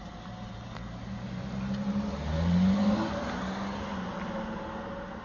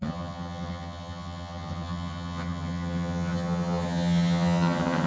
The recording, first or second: first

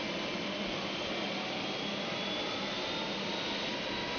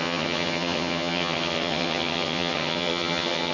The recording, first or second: first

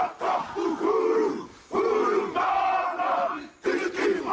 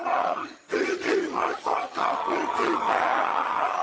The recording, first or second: first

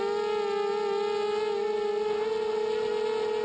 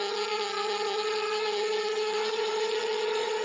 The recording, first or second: first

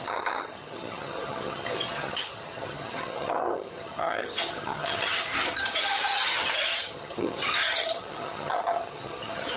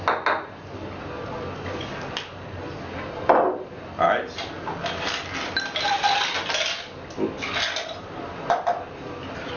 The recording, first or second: second